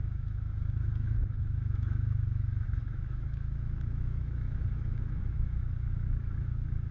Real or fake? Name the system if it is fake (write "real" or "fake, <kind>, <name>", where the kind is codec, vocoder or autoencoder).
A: fake, autoencoder, DAC-VAE